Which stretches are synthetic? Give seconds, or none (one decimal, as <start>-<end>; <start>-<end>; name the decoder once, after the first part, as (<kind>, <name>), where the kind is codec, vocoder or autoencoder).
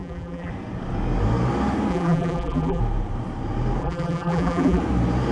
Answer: 0.0-0.5 (vocoder, BigVGAN v2); 1.9-2.8; 3.8-4.8